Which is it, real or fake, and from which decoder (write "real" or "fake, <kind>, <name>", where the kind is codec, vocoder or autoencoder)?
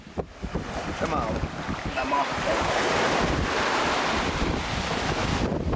real